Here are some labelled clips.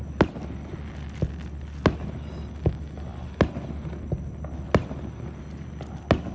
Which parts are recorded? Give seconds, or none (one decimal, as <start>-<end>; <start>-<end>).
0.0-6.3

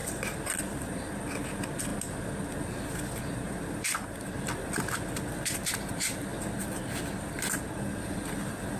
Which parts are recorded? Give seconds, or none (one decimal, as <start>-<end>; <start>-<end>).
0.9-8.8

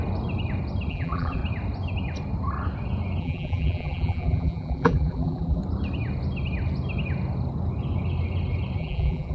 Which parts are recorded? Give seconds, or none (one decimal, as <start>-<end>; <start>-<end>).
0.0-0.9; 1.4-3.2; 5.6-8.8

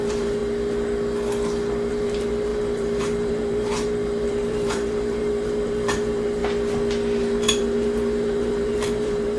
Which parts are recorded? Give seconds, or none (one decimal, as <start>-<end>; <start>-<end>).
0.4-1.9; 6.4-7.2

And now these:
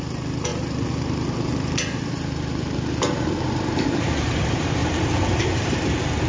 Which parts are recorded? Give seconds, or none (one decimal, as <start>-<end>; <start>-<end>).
0.0-0.5; 4.3-4.8; 5.7-6.3

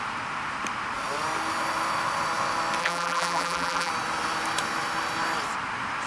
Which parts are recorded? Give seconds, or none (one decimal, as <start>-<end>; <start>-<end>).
0.0-2.8; 3.9-6.1